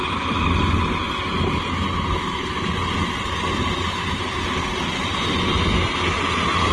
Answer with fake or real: real